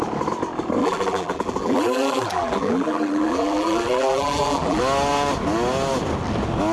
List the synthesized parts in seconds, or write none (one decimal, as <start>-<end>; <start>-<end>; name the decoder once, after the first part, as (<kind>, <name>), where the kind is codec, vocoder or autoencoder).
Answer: 0.8-4.8 (vocoder, BigVGAN v2)